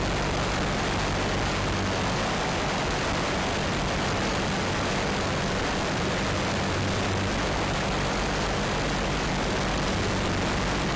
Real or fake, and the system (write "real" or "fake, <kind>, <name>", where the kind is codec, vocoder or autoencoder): real